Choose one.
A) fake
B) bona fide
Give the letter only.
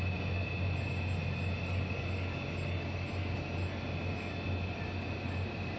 B